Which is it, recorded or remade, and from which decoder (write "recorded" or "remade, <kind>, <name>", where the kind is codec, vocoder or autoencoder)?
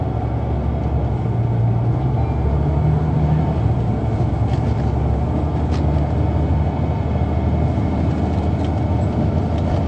recorded